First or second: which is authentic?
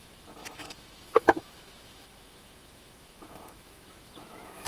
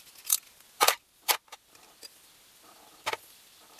second